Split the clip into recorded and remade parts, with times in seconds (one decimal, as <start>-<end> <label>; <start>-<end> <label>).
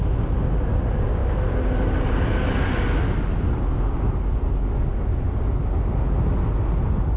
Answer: 0.0-7.2 recorded